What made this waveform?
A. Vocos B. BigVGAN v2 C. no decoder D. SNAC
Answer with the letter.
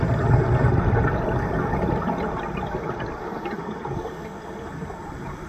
C